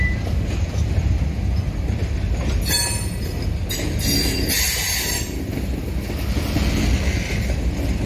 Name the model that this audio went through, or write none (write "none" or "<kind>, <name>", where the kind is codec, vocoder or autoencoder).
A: none